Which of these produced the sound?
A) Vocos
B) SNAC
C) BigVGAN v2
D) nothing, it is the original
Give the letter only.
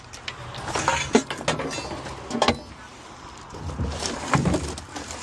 D